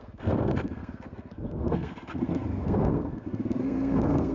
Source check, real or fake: fake